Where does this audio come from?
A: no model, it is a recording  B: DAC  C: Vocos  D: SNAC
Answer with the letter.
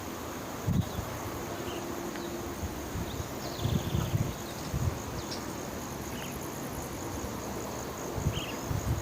A